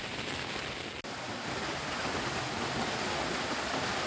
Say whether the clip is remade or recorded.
recorded